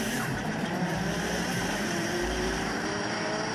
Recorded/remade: remade